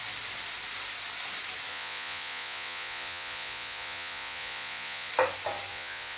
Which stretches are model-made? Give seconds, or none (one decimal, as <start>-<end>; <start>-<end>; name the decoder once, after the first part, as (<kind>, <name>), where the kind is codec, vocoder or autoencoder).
1.7-5.1 (vocoder, Vocos); 5.7-6.2